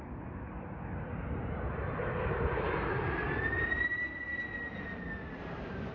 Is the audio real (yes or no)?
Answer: yes